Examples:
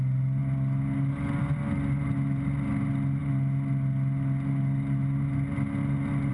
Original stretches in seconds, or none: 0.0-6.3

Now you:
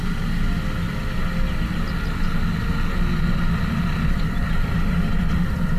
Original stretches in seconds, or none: 0.0-5.8